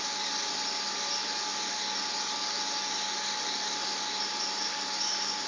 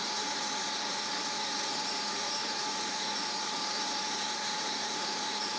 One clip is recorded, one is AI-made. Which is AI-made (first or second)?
second